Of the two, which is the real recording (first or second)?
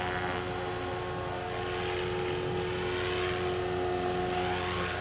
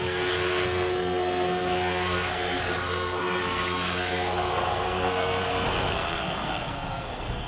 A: first